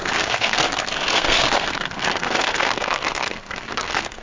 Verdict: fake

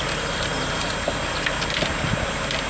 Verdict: real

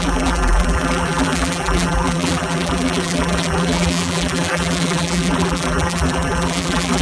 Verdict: fake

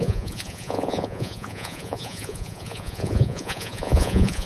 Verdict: fake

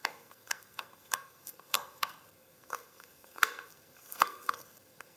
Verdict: fake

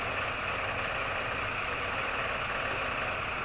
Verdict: real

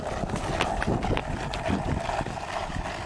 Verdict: real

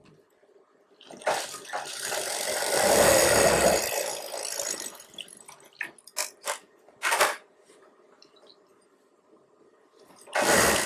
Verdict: fake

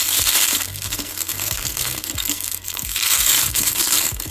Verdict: fake